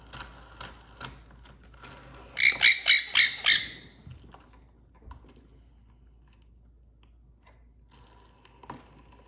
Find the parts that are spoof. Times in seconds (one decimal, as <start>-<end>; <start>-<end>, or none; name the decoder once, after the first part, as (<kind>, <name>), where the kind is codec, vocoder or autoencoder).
none